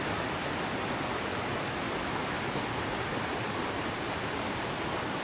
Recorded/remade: recorded